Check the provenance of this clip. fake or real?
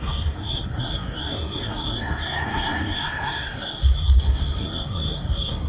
fake